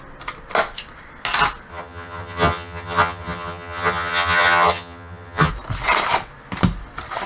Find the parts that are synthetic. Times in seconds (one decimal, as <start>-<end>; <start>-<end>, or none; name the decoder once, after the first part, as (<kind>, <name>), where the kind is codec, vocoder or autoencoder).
1.7-5.5 (vocoder, HiFi-GAN)